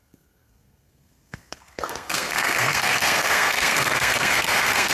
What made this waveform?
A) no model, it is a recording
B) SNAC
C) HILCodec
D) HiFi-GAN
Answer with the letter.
B